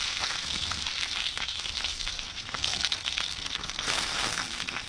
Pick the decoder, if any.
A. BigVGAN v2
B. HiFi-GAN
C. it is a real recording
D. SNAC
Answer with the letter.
D